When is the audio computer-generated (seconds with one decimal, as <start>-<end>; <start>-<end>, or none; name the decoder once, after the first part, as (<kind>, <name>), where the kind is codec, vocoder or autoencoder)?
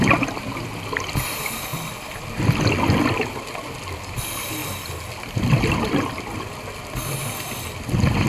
none